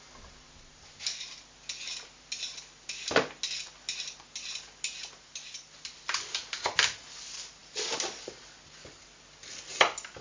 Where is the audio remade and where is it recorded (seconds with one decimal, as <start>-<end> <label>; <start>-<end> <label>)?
0.0-10.2 recorded